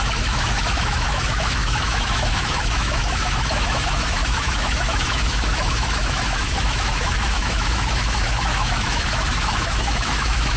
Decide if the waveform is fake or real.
fake